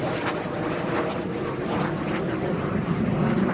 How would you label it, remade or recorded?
recorded